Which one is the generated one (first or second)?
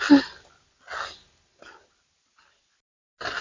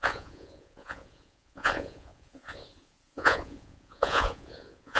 second